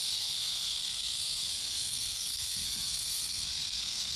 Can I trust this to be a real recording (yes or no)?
no